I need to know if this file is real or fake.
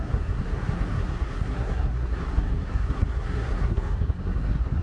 fake